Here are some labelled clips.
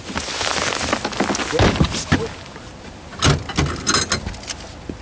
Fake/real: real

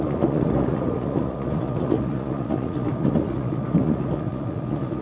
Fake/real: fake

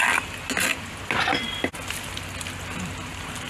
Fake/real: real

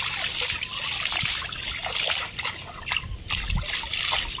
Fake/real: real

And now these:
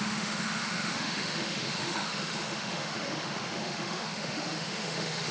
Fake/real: fake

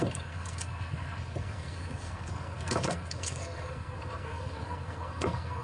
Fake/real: fake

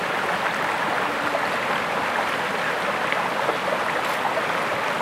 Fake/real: real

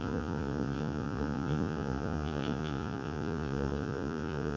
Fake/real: fake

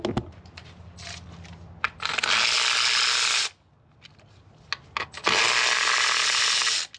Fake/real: real